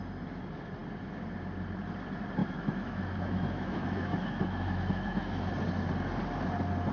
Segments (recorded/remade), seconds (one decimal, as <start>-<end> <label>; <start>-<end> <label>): 0.0-2.4 recorded; 2.4-5.5 remade; 5.5-6.9 recorded